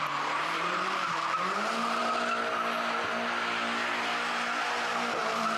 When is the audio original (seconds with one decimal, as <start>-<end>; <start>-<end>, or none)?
2.0-5.1